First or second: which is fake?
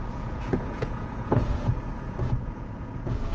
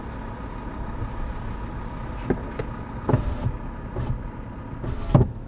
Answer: first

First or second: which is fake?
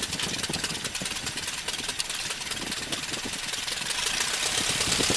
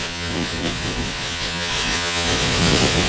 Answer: second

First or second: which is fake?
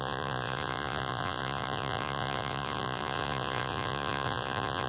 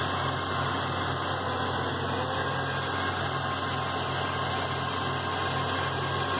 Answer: first